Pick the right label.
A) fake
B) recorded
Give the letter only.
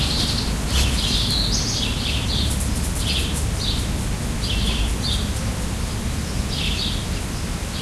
B